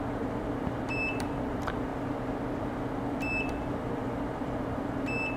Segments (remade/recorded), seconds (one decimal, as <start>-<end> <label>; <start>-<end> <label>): 0.0-1.9 remade; 1.9-2.6 recorded; 2.6-5.4 remade